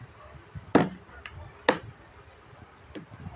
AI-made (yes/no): no